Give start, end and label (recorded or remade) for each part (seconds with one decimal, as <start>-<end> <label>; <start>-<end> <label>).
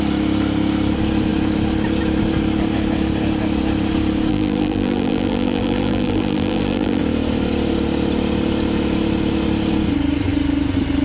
0.0-4.3 recorded; 4.3-7.0 remade; 7.0-11.0 recorded